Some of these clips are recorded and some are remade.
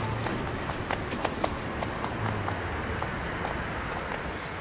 recorded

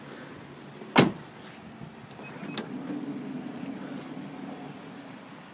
recorded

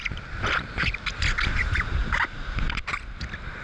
recorded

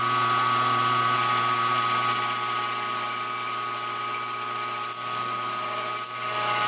recorded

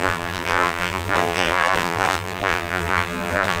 remade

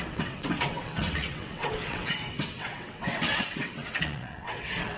remade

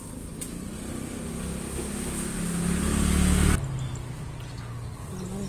recorded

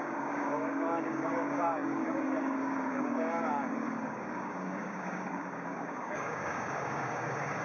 remade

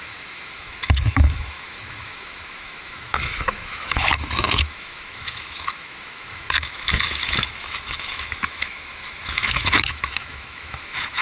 remade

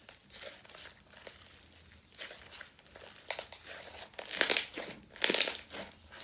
recorded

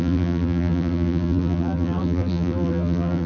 remade